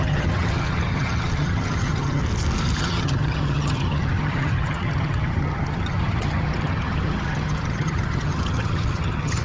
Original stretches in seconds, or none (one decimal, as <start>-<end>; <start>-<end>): 2.2-2.8